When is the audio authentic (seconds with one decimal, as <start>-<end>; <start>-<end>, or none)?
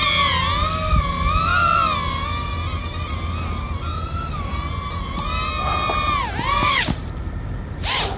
0.0-8.2